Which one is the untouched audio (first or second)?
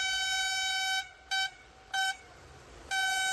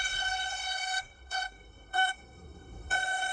first